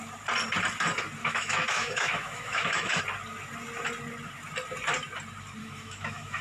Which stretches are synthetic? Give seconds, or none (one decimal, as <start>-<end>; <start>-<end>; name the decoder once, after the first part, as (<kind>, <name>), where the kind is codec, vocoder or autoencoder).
1.2-3.0 (autoencoder, DAC-VAE); 5.6-6.4